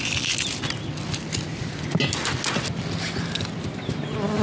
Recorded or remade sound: recorded